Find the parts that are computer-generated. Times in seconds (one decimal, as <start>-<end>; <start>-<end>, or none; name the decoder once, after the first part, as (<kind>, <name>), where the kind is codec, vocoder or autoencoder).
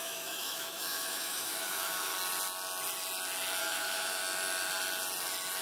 0.0-2.1 (autoencoder, DAC-VAE); 3.6-4.2